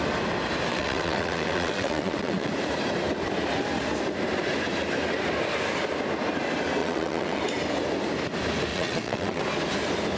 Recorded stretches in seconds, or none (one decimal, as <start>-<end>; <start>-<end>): 0.0-0.7; 2.5-6.8; 7.4-8.7; 9.4-10.2